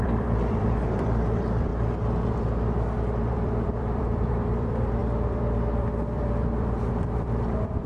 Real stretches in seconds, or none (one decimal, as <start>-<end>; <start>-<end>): 1.7-3.3